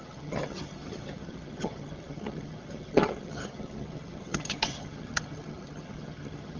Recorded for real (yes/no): no